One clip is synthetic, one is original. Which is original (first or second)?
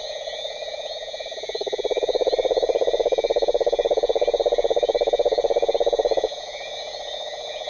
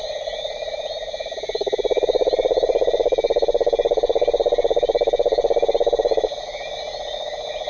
second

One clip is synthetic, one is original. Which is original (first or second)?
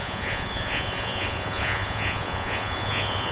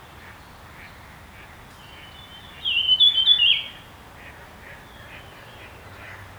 second